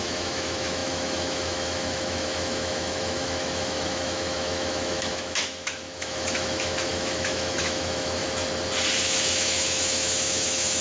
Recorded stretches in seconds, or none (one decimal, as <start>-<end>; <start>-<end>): 8.2-9.0